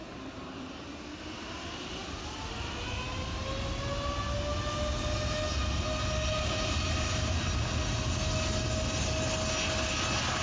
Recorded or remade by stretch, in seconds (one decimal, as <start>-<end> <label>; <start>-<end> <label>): 0.0-10.4 recorded

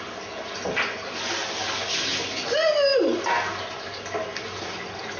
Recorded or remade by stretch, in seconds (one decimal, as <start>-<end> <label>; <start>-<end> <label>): 0.0-5.2 recorded